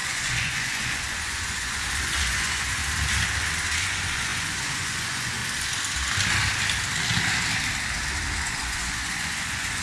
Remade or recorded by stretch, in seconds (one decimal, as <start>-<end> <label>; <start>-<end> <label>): 0.0-2.8 remade; 2.8-3.8 recorded; 3.8-5.4 remade; 5.4-8.4 recorded; 8.4-9.8 remade